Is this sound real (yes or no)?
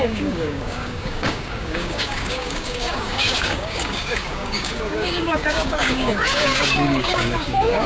no